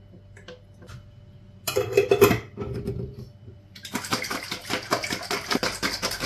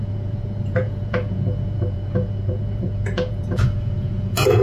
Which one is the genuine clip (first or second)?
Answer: first